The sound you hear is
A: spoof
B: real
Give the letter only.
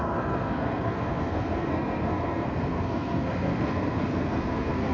A